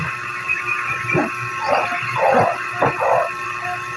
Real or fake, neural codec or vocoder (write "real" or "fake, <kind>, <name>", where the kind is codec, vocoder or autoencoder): real